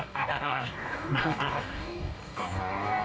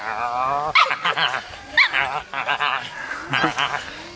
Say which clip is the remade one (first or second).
first